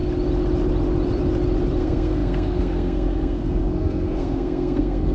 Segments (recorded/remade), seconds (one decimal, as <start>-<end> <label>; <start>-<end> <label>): 0.0-1.8 recorded; 1.8-5.1 remade

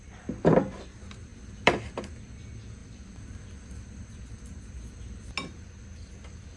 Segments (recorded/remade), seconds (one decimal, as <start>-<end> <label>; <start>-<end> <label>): 0.0-1.3 recorded; 1.3-1.8 remade; 1.8-2.8 recorded; 2.8-5.2 remade; 5.2-6.6 recorded

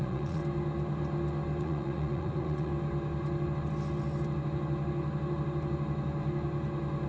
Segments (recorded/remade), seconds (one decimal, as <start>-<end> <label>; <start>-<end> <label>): 0.0-0.4 remade; 0.4-1.6 recorded; 1.6-2.7 remade; 2.7-7.1 recorded